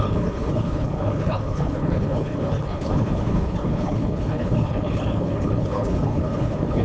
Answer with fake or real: fake